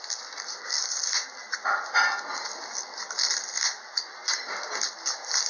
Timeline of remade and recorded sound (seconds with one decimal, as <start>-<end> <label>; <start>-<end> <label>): 0.0-5.5 recorded